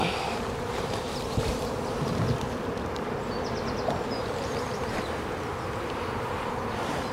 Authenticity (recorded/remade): remade